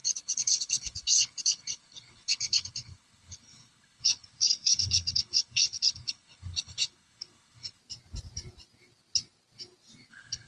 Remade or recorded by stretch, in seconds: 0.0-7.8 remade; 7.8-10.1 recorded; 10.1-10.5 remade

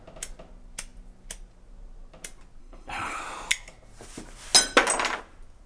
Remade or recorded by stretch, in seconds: 0.0-2.6 recorded; 2.6-3.2 remade; 3.2-5.7 recorded